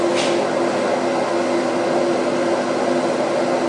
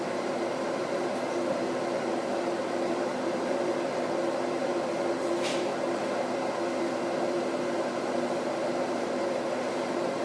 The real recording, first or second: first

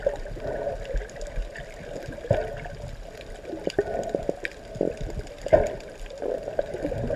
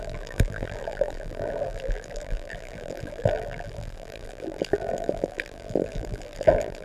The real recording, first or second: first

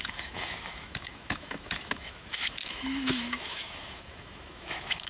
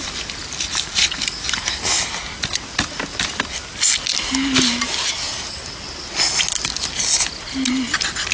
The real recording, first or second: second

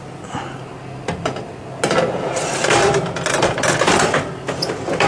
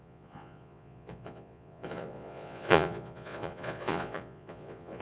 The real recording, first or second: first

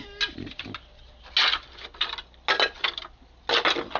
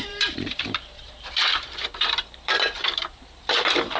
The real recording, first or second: first